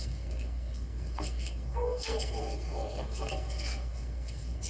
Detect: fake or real fake